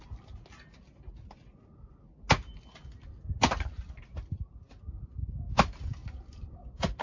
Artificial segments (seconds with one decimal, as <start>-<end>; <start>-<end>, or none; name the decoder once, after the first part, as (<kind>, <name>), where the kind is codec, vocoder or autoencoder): none